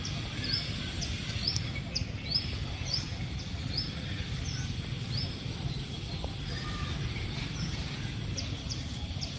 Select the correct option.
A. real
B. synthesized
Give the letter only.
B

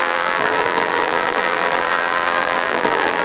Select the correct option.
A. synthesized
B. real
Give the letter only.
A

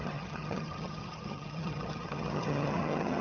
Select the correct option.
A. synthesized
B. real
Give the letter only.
A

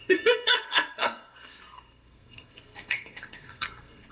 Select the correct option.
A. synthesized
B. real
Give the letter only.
A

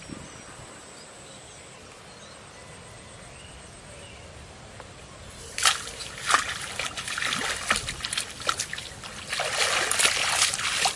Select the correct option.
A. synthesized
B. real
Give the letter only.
B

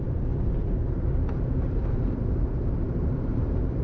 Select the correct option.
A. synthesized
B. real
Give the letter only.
A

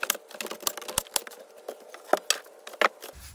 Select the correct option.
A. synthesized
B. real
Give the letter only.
B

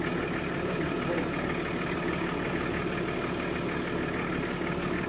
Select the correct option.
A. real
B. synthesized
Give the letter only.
A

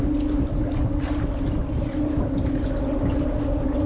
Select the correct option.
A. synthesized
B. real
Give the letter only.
B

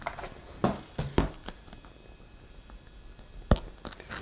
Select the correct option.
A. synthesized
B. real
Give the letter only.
B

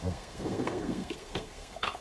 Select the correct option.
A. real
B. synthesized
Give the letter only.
B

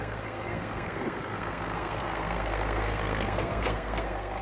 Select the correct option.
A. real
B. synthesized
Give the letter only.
B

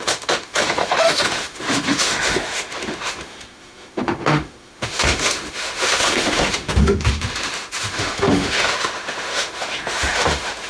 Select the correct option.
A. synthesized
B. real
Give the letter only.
A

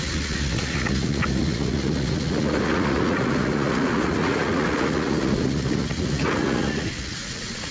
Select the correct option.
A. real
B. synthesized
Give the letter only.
B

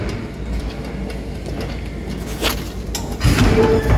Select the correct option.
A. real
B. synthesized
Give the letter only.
A